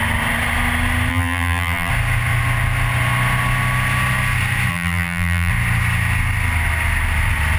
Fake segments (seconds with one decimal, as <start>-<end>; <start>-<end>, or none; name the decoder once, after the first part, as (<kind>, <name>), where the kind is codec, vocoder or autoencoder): 1.1-1.9 (vocoder, BigVGAN v2); 4.7-5.5